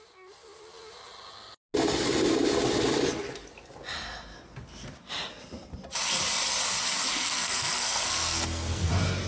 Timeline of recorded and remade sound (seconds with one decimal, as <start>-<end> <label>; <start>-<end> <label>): 0.0-7.1 recorded; 7.1-8.9 remade; 8.9-9.3 recorded